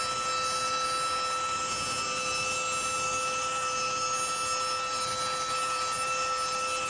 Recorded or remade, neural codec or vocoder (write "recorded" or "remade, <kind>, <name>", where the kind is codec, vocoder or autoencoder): recorded